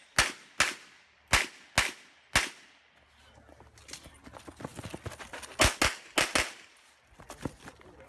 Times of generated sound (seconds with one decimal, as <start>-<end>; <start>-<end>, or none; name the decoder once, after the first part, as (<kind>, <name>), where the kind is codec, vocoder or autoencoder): none

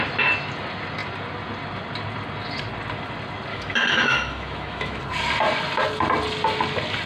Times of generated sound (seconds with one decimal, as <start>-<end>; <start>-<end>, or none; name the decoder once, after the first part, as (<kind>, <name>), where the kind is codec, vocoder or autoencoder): 3.5-5.0 (autoencoder, DAC-VAE)